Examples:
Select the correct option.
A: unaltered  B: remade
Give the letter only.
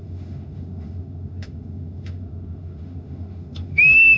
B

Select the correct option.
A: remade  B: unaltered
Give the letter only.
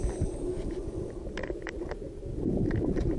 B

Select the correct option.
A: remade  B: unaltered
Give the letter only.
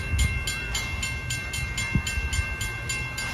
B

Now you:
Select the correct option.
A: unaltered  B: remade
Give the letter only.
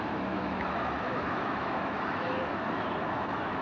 B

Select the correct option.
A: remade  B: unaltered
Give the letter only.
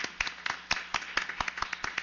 B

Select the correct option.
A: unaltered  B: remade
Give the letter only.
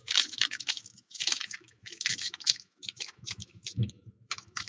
B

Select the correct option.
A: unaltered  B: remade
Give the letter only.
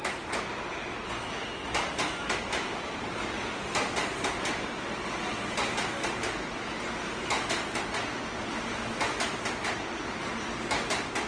A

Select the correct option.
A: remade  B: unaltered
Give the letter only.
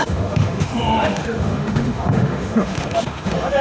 A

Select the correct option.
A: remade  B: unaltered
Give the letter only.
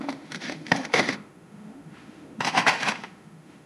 A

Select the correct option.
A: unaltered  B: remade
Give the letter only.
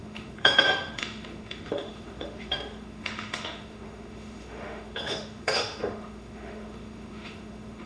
B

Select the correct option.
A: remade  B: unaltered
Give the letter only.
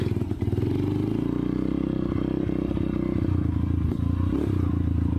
B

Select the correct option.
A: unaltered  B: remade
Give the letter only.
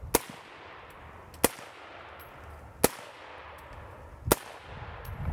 A